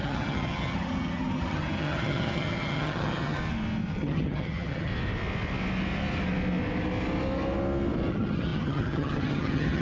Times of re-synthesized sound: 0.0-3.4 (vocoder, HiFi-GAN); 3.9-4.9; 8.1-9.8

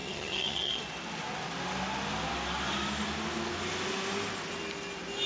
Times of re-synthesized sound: 0.0-0.8 (vocoder, HiFi-GAN)

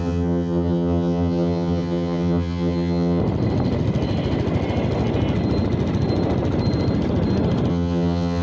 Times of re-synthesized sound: 0.0-3.2 (vocoder, HiFi-GAN); 7.7-8.4

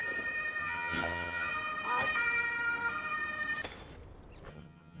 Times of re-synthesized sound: 0.6-1.5 (vocoder, HiFi-GAN); 4.5-5.0

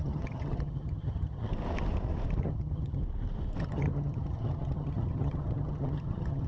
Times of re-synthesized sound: 0.0-1.5 (vocoder, HiFi-GAN); 2.4-3.0; 3.6-6.5

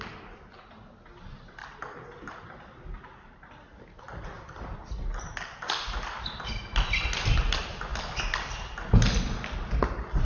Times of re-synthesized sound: none